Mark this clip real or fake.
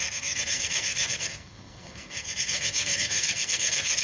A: fake